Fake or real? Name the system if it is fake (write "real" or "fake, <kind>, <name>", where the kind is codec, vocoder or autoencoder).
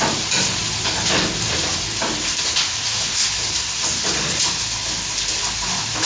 real